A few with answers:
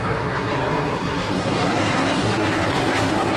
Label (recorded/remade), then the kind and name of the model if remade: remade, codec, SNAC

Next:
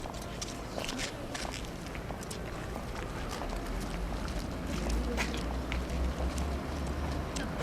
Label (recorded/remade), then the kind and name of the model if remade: recorded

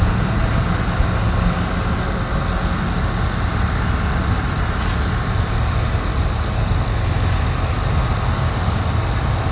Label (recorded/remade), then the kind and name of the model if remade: recorded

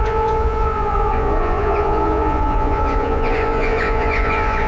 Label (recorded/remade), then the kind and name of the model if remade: remade, vocoder, Vocos